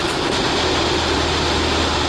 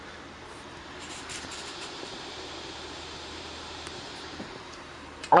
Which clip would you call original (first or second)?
first